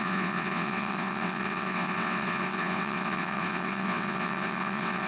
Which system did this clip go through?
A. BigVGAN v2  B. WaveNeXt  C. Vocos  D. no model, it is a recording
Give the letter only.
B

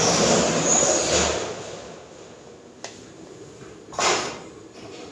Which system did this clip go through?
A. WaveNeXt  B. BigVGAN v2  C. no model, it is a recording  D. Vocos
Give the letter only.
C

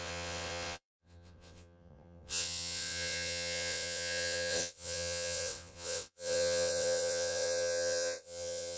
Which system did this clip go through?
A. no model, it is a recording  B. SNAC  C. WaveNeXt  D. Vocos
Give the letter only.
C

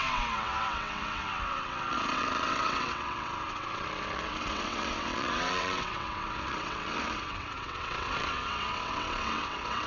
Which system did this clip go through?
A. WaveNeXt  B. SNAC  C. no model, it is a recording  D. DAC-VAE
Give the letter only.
A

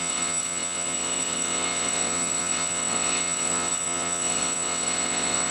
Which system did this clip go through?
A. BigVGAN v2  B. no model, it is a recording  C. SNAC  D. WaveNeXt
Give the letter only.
D